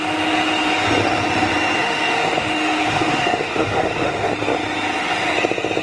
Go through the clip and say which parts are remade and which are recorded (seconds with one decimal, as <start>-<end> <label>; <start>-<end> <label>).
0.0-1.8 recorded; 1.8-4.3 remade; 4.3-5.8 recorded